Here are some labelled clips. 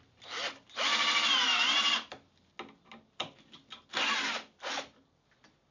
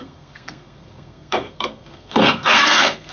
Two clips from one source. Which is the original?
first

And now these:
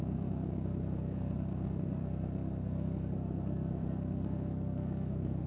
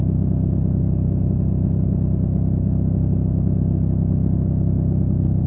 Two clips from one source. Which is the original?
second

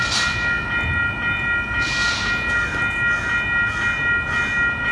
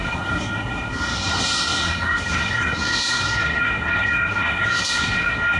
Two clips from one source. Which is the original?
first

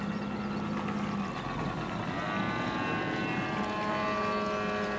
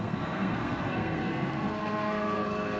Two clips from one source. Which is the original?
first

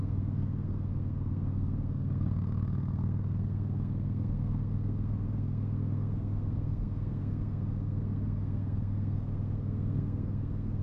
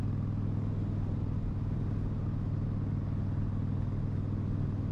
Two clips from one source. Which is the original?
second